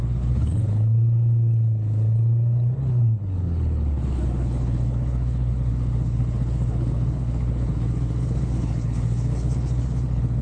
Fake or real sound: fake